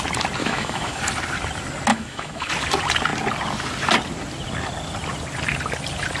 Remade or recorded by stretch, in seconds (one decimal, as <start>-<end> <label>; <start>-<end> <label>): 0.0-0.4 recorded; 0.4-1.0 remade; 1.0-1.9 recorded; 1.9-2.5 remade; 2.5-6.2 recorded